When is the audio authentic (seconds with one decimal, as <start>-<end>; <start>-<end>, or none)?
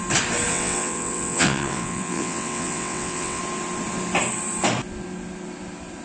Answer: 0.0-0.5; 3.4-6.0